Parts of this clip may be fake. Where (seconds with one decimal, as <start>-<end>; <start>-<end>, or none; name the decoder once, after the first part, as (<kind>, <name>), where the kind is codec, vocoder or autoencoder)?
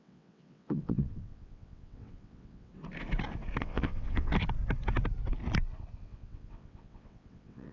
0.0-2.7 (vocoder, WaveNeXt); 3.6-4.3; 6.0-7.7